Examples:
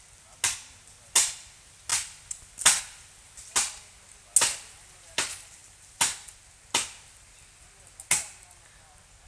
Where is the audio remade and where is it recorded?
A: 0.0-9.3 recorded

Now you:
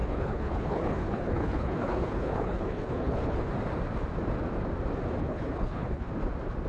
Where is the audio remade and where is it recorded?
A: 0.0-3.5 remade; 3.5-5.2 recorded; 5.2-6.1 remade; 6.1-6.7 recorded

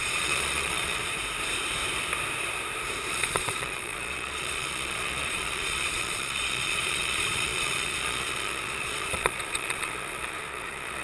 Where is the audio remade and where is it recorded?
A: 0.0-1.0 remade; 1.0-3.1 recorded; 3.1-11.0 remade

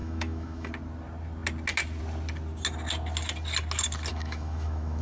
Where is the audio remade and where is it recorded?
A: 0.0-0.7 remade; 0.7-4.1 recorded; 4.1-5.0 remade

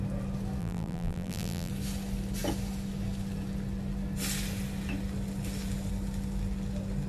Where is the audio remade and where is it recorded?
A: 0.0-0.6 recorded; 0.6-1.7 remade; 1.7-7.1 recorded

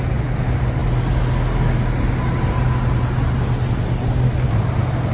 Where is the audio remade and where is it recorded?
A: 0.0-5.1 recorded

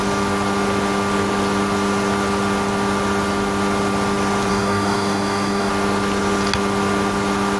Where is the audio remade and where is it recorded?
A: 0.0-4.5 recorded; 4.5-5.7 remade; 5.7-7.6 recorded